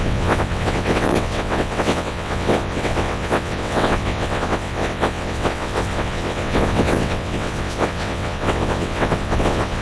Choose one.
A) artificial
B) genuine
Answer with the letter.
A